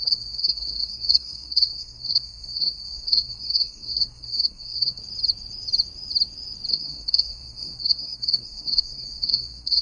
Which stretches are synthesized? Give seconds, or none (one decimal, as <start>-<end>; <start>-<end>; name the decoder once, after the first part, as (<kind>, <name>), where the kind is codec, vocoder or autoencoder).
0.0-5.0 (codec, SNAC); 6.7-9.8